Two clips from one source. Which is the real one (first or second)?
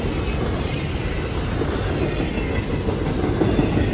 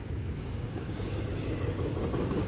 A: first